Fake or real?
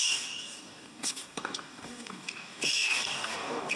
fake